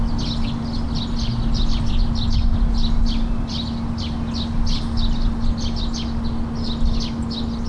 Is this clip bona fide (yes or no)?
yes